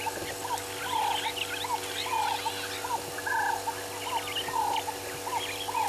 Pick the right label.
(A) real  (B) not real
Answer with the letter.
A